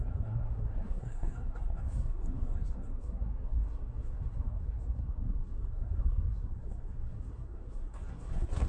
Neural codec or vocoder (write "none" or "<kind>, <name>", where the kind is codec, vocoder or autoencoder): codec, SNAC